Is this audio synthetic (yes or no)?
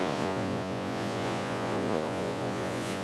yes